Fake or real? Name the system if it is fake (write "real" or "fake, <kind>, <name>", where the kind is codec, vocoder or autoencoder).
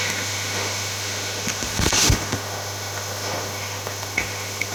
fake, autoencoder, DAC-VAE